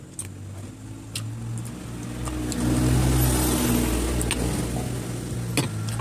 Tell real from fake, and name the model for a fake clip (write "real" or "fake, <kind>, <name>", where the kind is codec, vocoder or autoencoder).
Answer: real